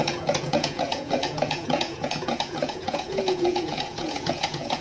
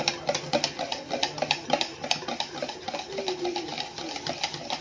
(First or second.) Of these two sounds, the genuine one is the second